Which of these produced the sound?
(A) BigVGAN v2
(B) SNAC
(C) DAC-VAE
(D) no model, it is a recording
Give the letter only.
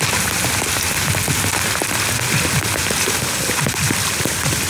D